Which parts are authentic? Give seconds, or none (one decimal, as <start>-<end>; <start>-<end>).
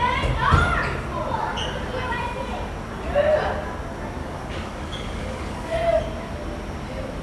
0.0-4.2; 6.0-7.2